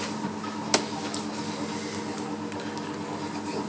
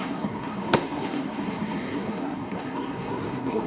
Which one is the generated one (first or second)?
second